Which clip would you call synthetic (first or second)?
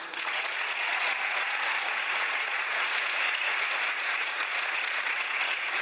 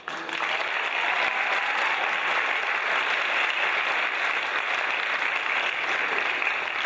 first